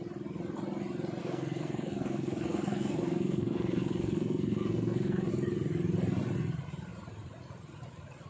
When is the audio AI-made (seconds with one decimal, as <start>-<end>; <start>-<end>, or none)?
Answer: 1.2-5.3